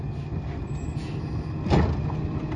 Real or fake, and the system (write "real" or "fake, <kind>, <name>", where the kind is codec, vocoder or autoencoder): real